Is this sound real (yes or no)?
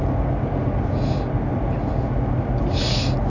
yes